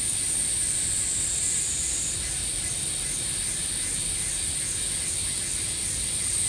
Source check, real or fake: real